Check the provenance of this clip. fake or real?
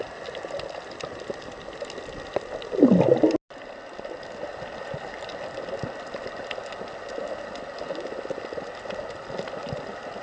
real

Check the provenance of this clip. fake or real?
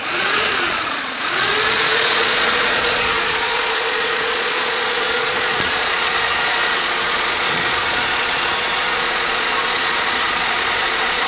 fake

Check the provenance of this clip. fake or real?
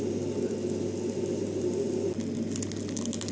real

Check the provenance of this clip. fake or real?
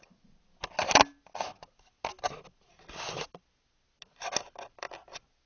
real